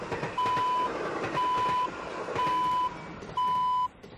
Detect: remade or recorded recorded